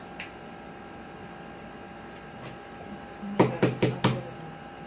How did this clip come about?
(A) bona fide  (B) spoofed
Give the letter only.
A